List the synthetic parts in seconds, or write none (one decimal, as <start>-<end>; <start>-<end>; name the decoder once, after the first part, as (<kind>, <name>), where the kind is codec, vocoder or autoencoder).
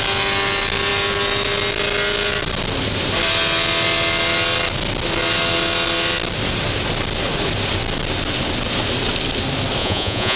9.8-10.4 (vocoder, Vocos)